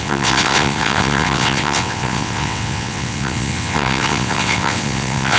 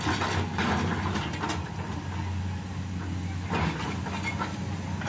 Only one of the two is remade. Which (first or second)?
first